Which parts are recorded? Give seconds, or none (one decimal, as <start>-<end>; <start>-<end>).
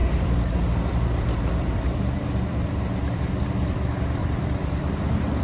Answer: 3.2-4.2